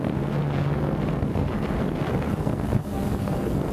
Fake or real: fake